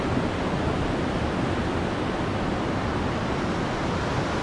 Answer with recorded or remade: recorded